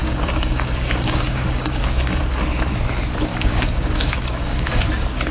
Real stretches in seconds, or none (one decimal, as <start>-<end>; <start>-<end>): 2.2-3.3; 4.8-5.3